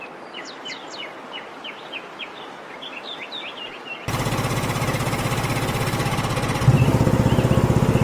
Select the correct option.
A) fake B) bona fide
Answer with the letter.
B